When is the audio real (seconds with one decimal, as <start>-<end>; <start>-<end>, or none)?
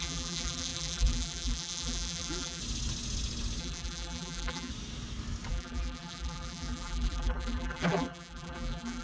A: 2.6-3.6; 4.7-5.5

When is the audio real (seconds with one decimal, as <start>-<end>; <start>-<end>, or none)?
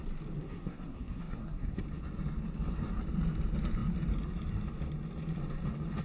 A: 0.0-0.4; 1.8-6.0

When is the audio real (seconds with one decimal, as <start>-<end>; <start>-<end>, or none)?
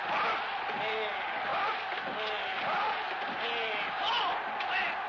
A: 0.0-5.1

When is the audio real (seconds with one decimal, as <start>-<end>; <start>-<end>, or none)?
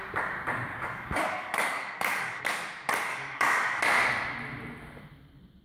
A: 0.0-0.7; 2.4-3.1; 3.8-5.6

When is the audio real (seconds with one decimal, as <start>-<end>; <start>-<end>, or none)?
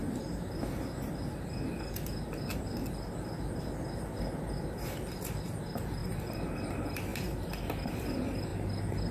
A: 0.0-5.2; 8.5-9.1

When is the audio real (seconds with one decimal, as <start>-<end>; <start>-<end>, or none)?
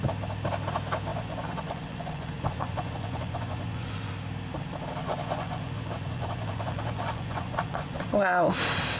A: 0.0-1.1; 4.1-5.0; 8.1-9.0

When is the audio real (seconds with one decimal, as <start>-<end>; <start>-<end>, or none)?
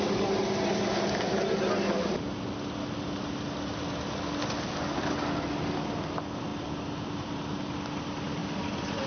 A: 0.0-9.1